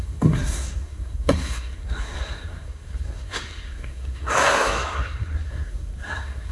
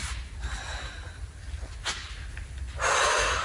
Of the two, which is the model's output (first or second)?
first